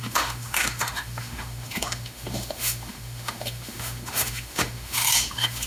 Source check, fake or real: fake